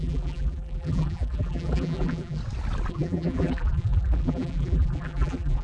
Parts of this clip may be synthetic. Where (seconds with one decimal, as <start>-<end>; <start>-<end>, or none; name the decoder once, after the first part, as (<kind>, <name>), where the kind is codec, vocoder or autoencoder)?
0.0-2.4 (vocoder, BigVGAN v2); 2.9-5.6